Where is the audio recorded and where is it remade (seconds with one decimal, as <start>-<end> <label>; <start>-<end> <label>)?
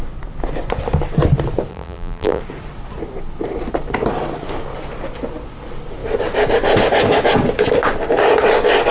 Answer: 0.0-1.7 recorded; 1.7-2.4 remade; 2.4-8.9 recorded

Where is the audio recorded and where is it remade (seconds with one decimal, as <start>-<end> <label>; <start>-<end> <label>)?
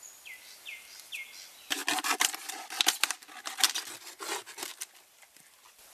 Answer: 0.0-1.8 recorded; 1.8-3.7 remade; 3.7-4.7 recorded; 4.7-5.4 remade; 5.4-5.9 recorded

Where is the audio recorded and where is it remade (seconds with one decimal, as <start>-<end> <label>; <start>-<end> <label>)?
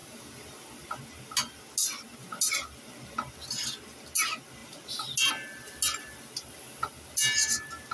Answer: 0.0-7.9 recorded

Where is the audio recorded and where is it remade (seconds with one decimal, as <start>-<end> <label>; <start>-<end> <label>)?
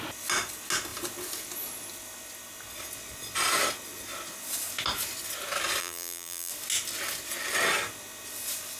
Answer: 0.0-5.8 recorded; 5.8-6.5 remade; 6.5-8.8 recorded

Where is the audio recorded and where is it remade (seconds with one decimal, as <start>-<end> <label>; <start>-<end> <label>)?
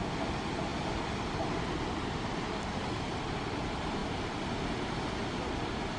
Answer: 0.0-4.0 recorded; 4.0-4.5 remade; 4.5-6.0 recorded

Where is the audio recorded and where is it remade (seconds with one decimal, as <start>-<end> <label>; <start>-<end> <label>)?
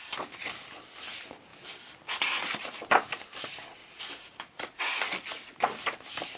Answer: 0.0-3.8 recorded; 3.8-4.8 remade; 4.8-6.4 recorded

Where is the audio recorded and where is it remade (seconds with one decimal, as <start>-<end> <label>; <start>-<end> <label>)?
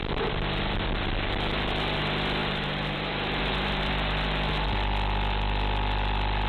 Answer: 0.0-2.4 recorded; 2.4-3.9 remade; 3.9-6.5 recorded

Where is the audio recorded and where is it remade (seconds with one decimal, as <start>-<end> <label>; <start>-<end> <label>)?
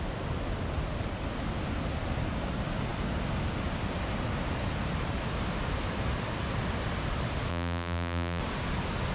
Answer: 0.0-7.5 recorded; 7.5-8.4 remade; 8.4-9.1 recorded